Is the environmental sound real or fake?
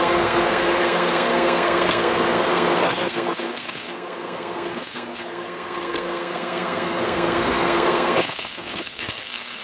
fake